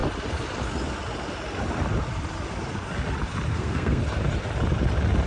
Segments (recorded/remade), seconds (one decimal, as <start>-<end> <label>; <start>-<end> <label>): 0.0-3.5 recorded; 3.5-4.0 remade; 4.0-5.3 recorded